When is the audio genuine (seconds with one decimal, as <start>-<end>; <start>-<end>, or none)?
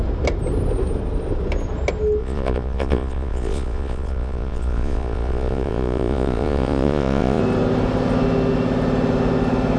0.0-2.2; 7.4-9.8